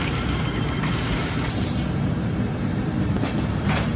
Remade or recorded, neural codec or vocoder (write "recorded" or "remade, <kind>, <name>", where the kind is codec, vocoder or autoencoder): remade, vocoder, BigVGAN v2